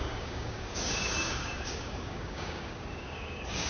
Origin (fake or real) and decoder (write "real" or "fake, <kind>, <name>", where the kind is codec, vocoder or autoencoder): fake, codec, DAC